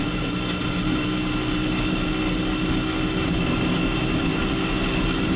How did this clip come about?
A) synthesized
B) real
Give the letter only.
B